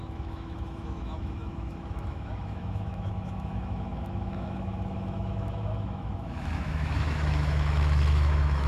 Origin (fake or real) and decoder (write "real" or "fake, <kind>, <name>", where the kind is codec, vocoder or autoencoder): fake, autoencoder, DAC-VAE